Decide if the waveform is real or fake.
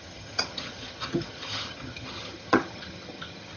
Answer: fake